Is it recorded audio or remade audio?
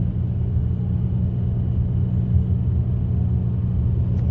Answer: recorded